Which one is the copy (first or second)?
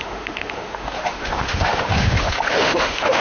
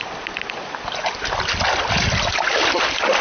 first